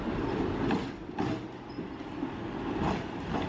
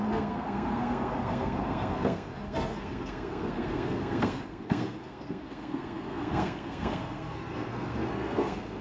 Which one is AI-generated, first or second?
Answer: second